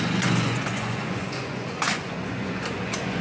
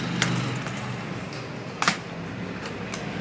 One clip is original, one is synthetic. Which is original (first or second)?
second